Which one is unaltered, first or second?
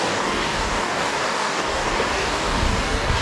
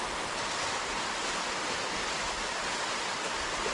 second